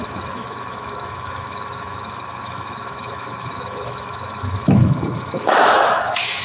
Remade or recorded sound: remade